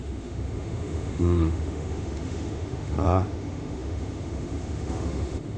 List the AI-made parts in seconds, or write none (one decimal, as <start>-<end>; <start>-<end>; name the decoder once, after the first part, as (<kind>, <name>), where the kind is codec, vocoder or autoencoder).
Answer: 0.0-5.6 (autoencoder, DAC-VAE)